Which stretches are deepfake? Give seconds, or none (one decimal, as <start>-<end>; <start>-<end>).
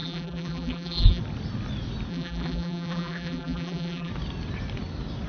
0.0-1.2; 2.1-4.1